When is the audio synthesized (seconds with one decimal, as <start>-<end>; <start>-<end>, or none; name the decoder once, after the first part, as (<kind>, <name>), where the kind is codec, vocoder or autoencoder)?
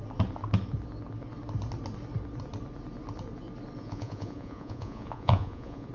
3.8-5.9 (vocoder, Vocos)